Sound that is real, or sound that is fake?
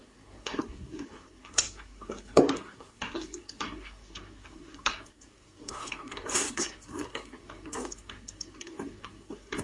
fake